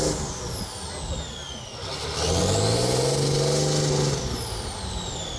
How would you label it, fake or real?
real